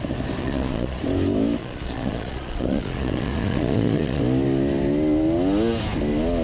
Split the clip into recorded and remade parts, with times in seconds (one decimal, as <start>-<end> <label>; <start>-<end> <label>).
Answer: 0.0-0.4 recorded; 0.4-1.0 remade; 1.0-1.6 recorded; 1.6-4.2 remade; 4.2-6.4 recorded